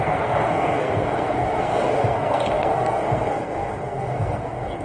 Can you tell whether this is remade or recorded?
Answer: remade